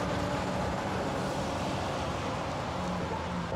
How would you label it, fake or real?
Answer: real